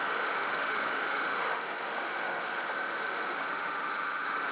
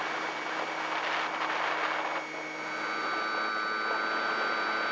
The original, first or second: second